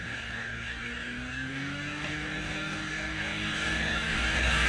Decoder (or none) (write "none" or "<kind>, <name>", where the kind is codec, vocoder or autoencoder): codec, DAC